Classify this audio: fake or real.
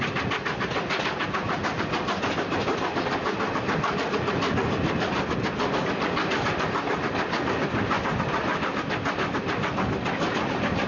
real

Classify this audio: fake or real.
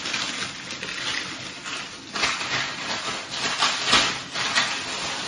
real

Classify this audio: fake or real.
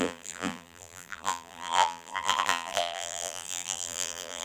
fake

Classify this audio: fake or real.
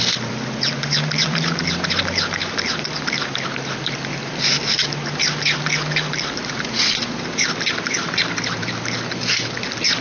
fake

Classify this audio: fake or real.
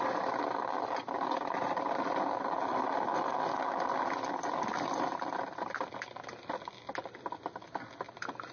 real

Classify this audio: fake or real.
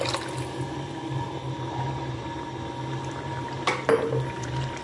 real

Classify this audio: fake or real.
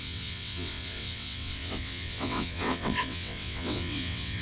fake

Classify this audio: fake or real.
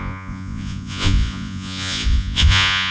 fake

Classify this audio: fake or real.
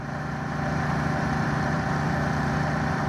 fake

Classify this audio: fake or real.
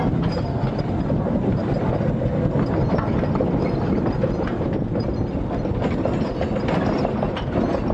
real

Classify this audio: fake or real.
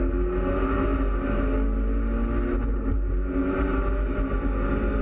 real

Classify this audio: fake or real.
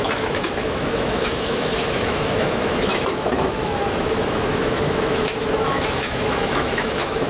fake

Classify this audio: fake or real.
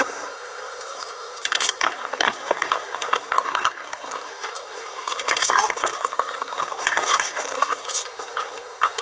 fake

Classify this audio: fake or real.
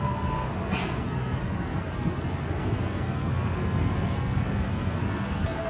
fake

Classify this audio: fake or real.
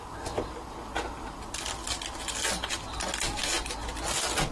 real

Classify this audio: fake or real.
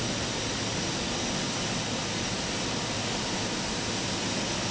real